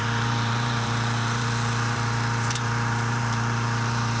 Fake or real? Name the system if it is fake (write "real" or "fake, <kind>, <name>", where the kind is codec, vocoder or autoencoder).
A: fake, vocoder, BigVGAN v2